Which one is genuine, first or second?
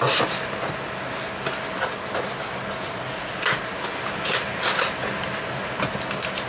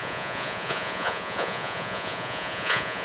first